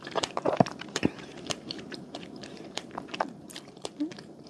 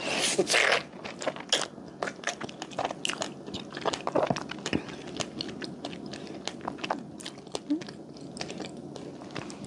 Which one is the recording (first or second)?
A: second